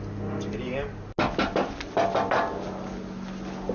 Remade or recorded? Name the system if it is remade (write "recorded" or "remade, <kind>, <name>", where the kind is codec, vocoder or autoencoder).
recorded